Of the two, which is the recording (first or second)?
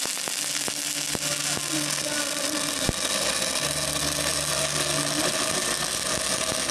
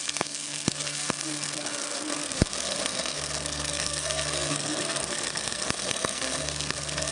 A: first